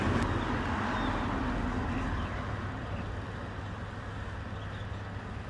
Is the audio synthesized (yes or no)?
no